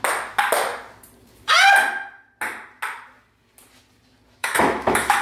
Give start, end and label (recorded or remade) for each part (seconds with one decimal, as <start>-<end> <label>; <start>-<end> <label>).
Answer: 0.0-4.4 recorded; 4.4-5.2 remade